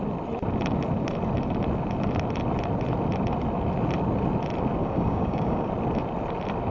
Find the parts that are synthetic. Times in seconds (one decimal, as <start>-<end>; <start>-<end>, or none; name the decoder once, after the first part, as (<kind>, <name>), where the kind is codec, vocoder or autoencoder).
4.8-5.7 (codec, DAC)